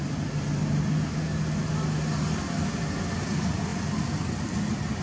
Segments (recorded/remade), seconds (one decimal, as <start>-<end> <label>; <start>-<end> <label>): 0.0-5.0 recorded